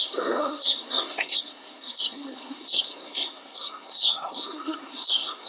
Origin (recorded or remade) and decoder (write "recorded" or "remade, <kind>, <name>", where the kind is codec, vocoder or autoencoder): remade, codec, SNAC